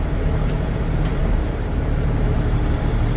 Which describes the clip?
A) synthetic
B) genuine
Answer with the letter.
A